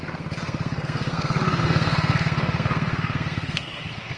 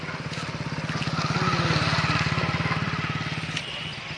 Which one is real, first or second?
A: second